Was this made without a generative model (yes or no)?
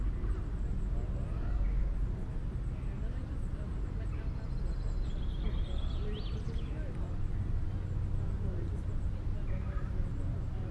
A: yes